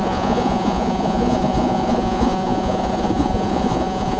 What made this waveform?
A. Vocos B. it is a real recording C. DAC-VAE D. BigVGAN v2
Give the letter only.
A